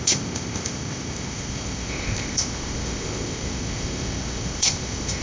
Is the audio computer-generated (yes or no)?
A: yes